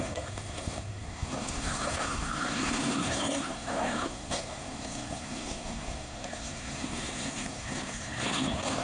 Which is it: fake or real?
fake